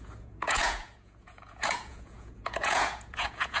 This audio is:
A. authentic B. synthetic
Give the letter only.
B